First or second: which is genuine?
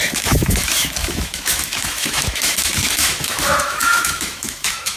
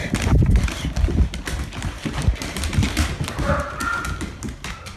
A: second